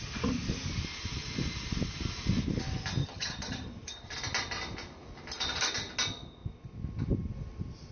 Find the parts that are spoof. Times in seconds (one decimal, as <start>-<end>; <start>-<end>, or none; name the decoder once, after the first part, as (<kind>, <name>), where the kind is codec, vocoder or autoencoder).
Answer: 3.0-3.7 (vocoder, HiFi-GAN)